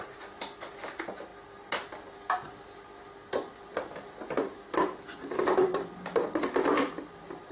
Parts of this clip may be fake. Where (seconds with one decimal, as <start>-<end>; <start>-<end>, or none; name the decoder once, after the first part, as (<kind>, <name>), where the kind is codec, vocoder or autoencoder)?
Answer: none